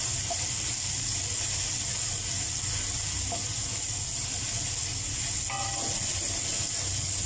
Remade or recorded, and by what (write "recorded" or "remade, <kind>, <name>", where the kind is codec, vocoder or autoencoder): recorded